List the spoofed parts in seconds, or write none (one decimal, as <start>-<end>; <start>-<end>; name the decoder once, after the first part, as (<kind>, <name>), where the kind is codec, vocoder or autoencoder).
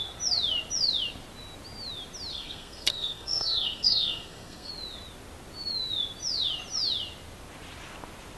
2.3-4.7 (codec, SNAC)